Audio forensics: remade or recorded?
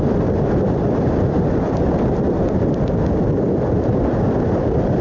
recorded